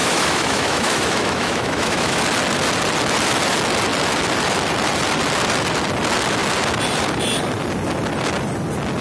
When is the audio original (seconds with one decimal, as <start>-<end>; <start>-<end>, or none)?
2.2-9.0